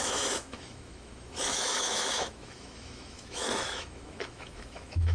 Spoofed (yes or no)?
yes